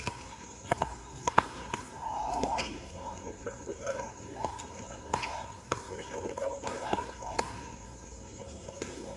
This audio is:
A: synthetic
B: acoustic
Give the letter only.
A